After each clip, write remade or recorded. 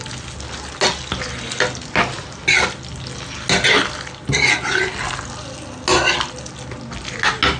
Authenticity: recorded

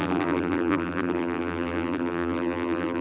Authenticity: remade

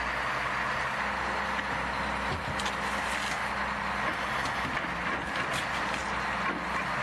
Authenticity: recorded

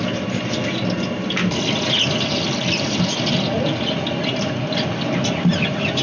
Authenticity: recorded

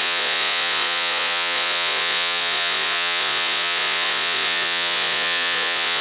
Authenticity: remade